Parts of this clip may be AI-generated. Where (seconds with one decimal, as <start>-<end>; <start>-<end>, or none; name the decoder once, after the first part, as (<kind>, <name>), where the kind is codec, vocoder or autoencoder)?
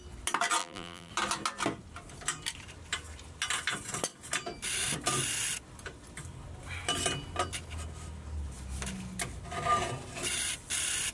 0.6-1.1 (vocoder, BigVGAN v2)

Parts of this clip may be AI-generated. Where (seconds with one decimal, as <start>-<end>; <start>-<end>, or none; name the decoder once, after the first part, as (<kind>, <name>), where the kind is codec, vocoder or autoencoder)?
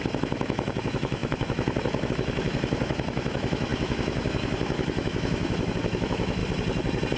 0.0-6.4 (autoencoder, DAC-VAE)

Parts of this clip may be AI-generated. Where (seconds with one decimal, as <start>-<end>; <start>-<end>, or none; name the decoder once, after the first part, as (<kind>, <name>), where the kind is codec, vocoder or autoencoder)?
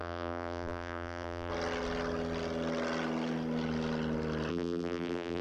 0.0-1.5 (vocoder, BigVGAN v2); 4.5-5.4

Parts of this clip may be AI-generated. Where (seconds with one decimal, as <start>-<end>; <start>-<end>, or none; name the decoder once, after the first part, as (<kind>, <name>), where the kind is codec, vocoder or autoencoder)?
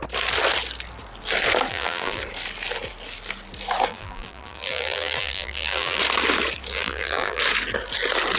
1.7-2.2 (vocoder, BigVGAN v2); 3.9-6.0; 6.7-7.4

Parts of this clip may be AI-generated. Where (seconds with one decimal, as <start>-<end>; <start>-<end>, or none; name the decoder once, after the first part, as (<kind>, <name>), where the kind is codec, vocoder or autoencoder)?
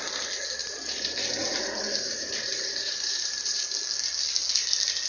0.6-3.7 (vocoder, BigVGAN v2)